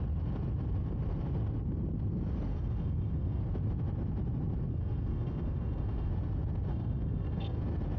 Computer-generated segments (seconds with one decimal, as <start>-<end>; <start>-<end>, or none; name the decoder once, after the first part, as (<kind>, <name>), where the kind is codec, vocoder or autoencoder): 2.5-3.4 (codec, SNAC); 4.7-6.1; 6.7-7.6